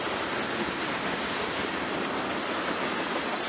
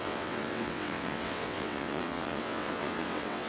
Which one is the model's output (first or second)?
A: second